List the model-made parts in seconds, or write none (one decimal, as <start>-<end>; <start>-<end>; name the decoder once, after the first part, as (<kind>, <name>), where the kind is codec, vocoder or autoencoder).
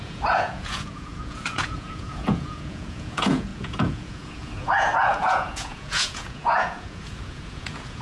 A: 0.0-8.0 (vocoder, Vocos)